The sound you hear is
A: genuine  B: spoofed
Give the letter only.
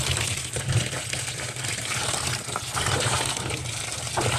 A